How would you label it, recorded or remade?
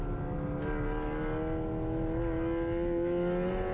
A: recorded